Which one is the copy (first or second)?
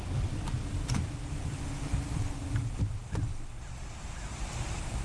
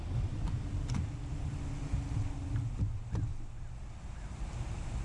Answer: first